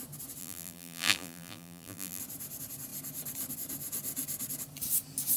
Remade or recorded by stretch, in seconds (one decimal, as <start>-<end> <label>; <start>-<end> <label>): 0.0-0.4 recorded; 0.4-2.2 remade; 2.2-5.4 recorded